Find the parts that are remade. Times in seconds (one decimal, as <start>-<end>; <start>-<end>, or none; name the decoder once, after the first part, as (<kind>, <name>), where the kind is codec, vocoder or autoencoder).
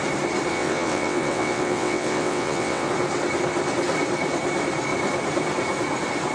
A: 0.5-2.9 (vocoder, WaveNeXt)